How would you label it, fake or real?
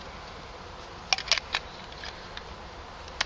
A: real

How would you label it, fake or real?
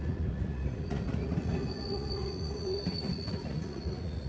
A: fake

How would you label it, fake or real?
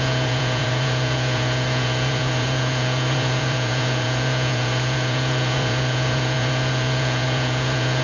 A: fake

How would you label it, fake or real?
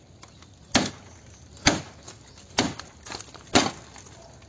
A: real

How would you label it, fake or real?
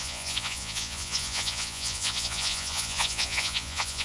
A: fake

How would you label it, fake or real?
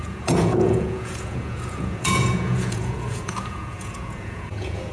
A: fake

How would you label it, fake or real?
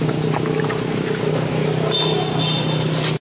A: real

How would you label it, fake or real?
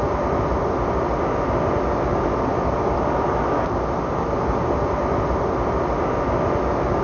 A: real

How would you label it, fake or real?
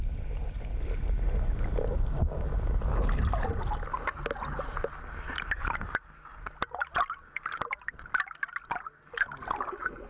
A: real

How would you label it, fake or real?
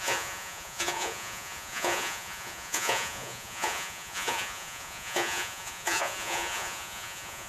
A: fake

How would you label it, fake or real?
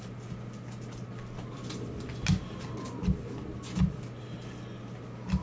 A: real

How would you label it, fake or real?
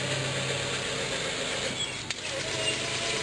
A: real